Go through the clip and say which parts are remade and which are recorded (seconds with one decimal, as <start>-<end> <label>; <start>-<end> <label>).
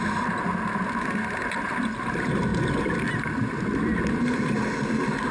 0.0-5.3 recorded